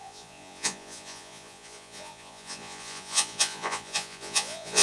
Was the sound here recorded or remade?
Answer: remade